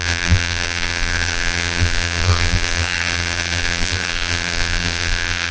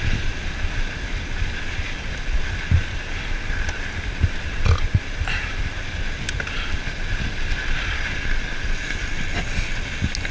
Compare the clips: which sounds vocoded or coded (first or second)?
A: first